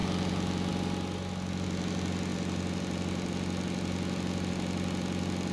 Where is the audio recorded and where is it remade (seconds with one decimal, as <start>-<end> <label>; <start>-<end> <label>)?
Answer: 0.0-5.5 recorded